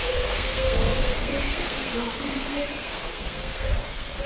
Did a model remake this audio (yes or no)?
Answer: yes